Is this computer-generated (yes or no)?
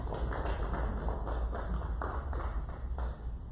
no